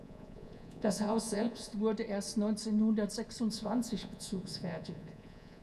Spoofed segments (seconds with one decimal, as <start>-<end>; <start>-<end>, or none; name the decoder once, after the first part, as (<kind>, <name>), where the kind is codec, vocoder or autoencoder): 0.0-1.7 (vocoder, Vocos); 3.5-5.6